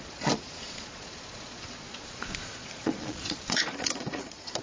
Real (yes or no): no